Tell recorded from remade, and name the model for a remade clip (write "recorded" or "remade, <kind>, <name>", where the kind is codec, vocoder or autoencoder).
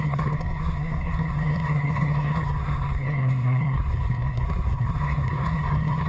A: remade, codec, SNAC